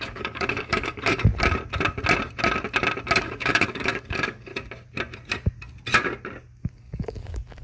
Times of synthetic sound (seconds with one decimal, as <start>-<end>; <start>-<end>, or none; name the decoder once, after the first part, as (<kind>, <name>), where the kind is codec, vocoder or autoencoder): 0.0-1.3 (codec, DAC); 3.2-4.5; 6.6-7.6